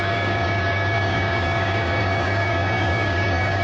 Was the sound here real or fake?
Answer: fake